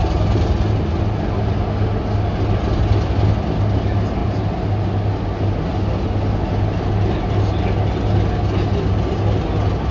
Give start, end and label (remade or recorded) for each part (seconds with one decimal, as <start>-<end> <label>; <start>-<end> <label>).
0.0-9.9 recorded